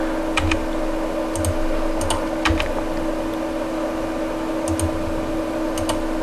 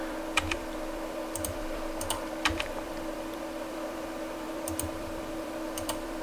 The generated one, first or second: second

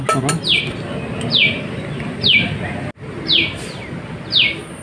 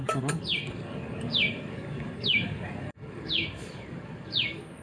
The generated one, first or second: second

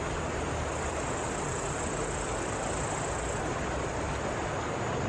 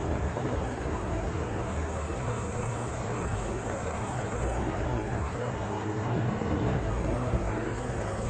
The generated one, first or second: second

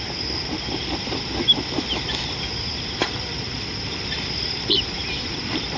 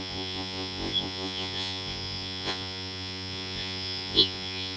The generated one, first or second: second